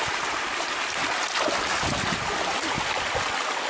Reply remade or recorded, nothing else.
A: recorded